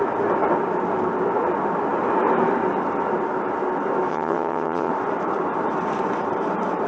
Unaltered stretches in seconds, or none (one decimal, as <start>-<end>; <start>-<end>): 0.0-4.1; 4.9-6.9